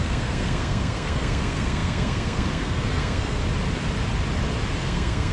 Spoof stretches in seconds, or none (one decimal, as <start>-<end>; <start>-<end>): 0.0-3.4; 4.7-5.3